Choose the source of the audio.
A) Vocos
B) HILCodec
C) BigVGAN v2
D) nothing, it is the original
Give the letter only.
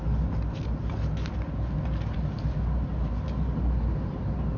D